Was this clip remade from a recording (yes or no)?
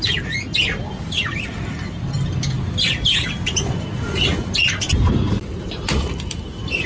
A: no